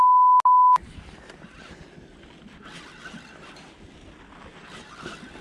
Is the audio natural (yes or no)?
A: yes